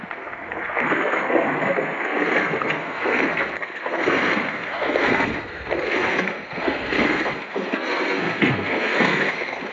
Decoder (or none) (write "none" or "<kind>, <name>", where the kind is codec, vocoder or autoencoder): codec, SNAC